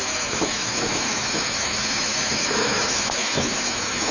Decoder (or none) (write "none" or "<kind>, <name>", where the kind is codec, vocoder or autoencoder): autoencoder, DAC-VAE